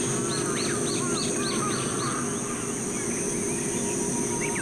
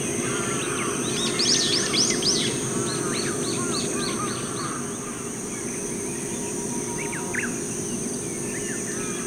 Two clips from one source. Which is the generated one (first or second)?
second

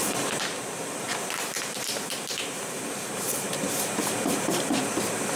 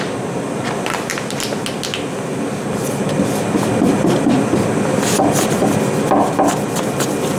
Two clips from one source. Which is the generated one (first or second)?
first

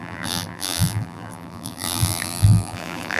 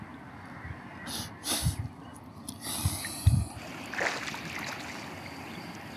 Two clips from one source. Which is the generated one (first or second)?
first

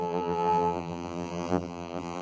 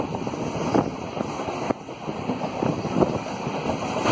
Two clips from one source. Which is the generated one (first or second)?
first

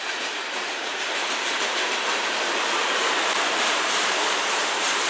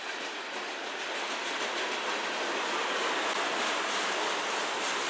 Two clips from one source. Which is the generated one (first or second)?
first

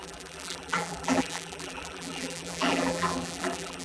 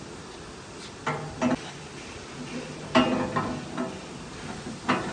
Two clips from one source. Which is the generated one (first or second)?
first